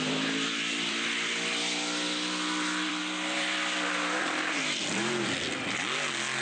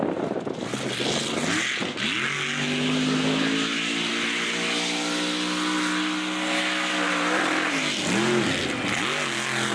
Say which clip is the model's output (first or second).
first